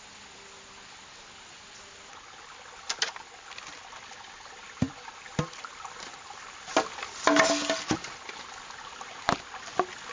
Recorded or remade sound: recorded